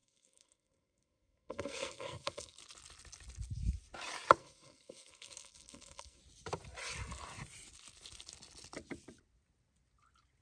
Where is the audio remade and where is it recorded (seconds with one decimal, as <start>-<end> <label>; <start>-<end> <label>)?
0.0-2.6 remade; 2.6-4.4 recorded; 4.4-6.2 remade; 6.2-10.4 recorded